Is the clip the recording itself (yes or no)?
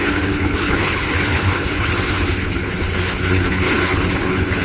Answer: no